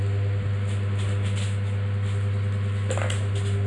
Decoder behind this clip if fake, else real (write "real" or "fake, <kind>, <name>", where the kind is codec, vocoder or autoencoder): real